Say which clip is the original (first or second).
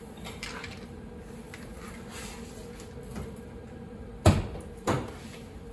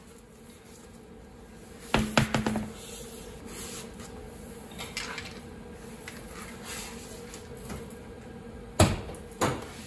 second